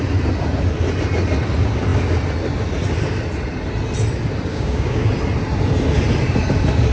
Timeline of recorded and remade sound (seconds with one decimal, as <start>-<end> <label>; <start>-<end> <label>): 0.0-4.5 recorded; 4.5-5.1 remade; 5.1-6.9 recorded